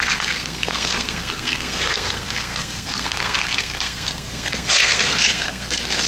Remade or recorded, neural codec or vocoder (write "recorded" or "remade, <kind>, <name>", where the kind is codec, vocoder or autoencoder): remade, codec, SNAC